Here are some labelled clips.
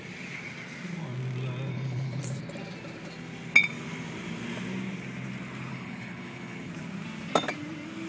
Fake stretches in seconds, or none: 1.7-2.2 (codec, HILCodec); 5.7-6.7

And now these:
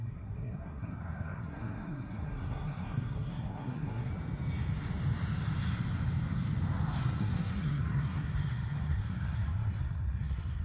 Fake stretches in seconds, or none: 0.0-4.1 (codec, SNAC); 7.0-10.6

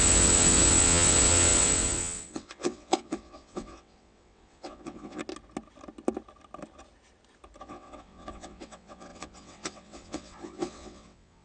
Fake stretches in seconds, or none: 0.0-5.2 (vocoder, WaveNeXt); 7.6-11.4

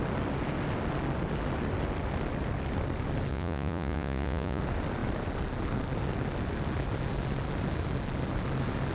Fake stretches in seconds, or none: 3.3-4.6 (vocoder, Vocos)

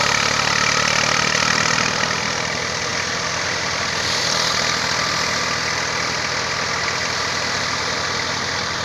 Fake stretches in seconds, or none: none

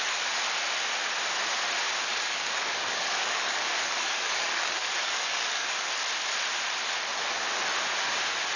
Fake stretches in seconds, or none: 2.1-5.9 (codec, DAC)